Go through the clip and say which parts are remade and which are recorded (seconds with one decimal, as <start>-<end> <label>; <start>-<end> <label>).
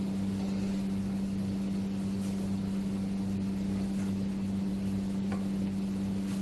0.0-6.4 recorded